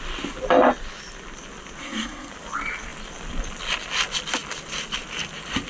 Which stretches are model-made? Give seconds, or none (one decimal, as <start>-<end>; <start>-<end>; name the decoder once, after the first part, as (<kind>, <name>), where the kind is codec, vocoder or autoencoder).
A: 1.8-2.3 (codec, SNAC)